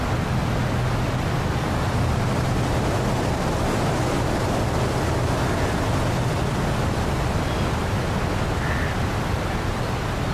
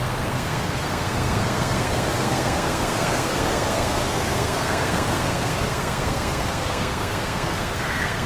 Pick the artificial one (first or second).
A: second